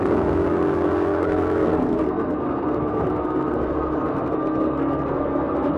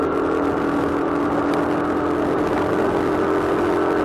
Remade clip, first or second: first